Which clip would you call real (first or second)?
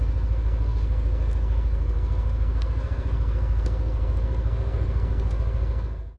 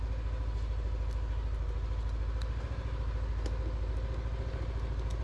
second